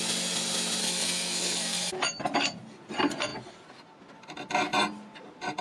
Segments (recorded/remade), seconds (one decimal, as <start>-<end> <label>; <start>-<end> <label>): 0.0-0.8 recorded; 0.8-1.9 remade; 1.9-5.6 recorded